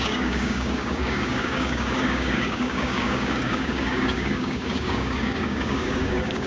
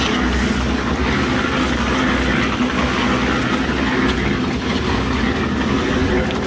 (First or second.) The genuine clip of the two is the second